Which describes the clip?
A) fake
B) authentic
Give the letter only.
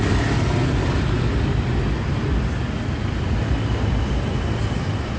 B